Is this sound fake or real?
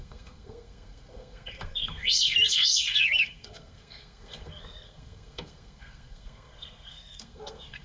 fake